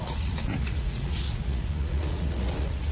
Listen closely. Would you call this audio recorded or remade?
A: remade